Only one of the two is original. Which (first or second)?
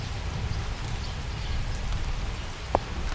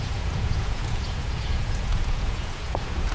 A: first